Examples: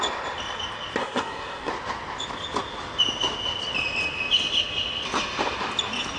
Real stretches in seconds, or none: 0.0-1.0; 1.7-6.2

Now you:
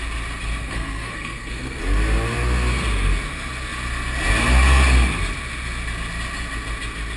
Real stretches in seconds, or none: 0.0-0.6; 1.8-7.2